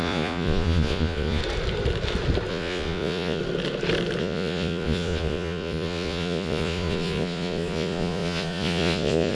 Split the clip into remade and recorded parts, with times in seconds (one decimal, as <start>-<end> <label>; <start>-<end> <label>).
0.0-1.4 remade; 1.4-2.5 recorded; 2.5-3.4 remade; 3.4-4.2 recorded; 4.2-9.3 remade